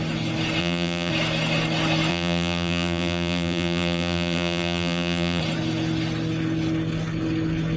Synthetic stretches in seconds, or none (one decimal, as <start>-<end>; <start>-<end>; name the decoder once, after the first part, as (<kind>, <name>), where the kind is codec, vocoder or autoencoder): 0.6-1.1 (vocoder, BigVGAN v2); 2.1-5.4